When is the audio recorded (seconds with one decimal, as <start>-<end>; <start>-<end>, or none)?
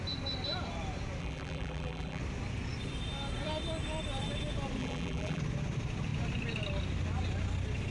0.0-1.2; 2.2-4.8; 5.4-7.9